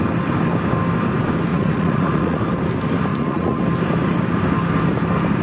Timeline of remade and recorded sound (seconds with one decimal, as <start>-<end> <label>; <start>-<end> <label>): 0.0-1.5 recorded; 1.5-2.4 remade; 2.4-3.1 recorded; 3.1-3.6 remade; 3.6-5.4 recorded